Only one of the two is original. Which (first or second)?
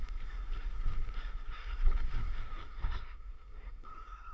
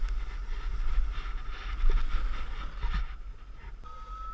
second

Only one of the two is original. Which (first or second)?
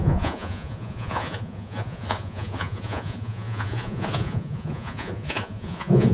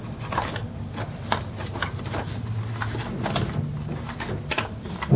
second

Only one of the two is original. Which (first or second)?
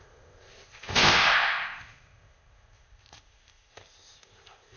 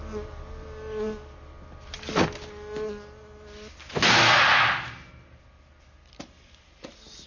second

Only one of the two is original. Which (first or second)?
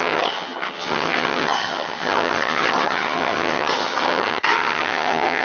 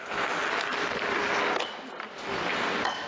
second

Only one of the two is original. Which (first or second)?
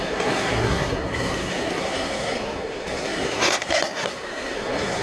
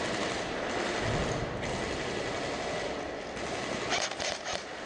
second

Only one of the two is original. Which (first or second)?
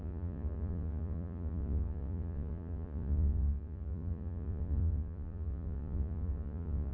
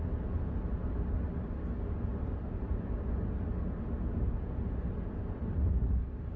second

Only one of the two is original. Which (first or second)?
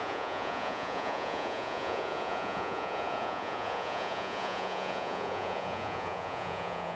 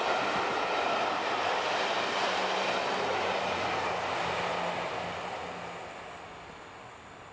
second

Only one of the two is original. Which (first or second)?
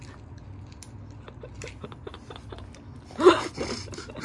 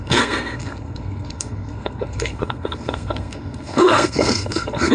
first